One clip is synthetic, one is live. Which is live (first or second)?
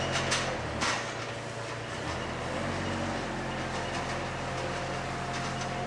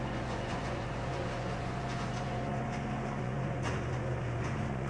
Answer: first